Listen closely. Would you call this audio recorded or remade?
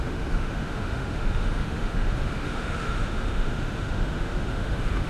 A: remade